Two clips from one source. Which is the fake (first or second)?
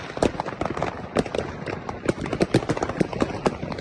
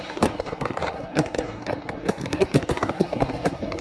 second